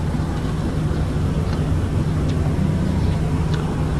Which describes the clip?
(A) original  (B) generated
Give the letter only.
A